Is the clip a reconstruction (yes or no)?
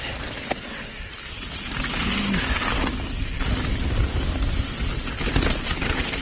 no